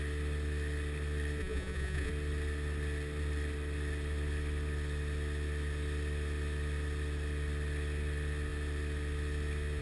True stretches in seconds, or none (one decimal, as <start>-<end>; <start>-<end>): 0.0-1.4; 2.1-9.8